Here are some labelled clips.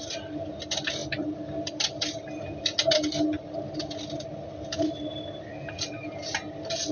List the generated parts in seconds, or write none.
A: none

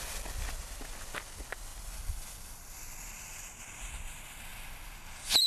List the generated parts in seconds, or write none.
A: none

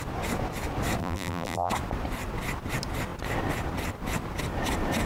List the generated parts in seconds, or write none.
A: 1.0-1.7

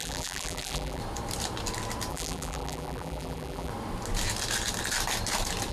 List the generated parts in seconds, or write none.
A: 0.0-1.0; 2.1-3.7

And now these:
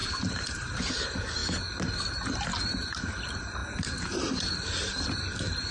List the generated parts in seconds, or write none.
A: 0.0-1.4; 2.7-5.7

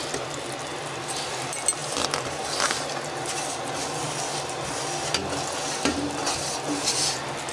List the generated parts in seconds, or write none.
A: none